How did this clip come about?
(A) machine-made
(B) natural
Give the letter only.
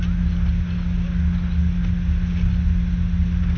B